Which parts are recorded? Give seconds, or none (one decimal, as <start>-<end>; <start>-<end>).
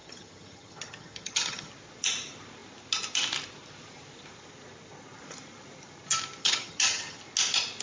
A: 1.7-6.4; 7.2-7.8